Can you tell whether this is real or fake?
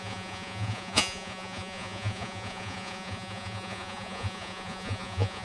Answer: fake